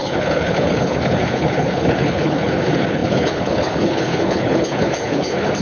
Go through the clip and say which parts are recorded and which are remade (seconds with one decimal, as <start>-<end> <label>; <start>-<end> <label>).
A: 0.0-5.6 remade